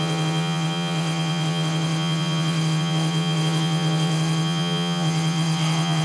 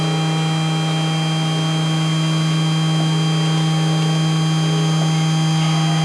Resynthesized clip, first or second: first